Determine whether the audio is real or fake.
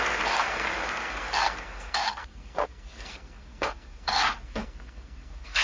fake